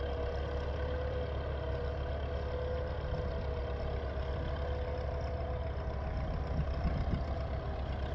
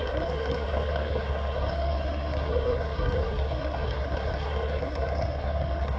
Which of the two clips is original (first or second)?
first